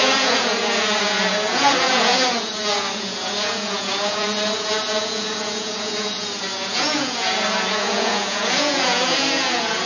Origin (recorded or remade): remade